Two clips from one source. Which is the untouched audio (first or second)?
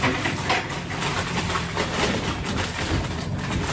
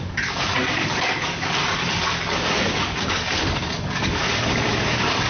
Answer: first